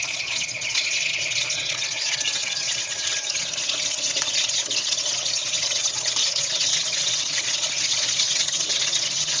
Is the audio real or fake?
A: fake